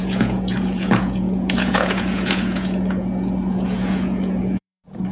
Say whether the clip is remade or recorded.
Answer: remade